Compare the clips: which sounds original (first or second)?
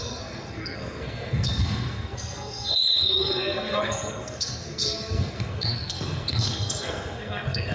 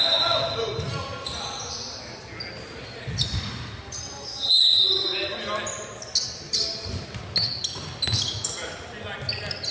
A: second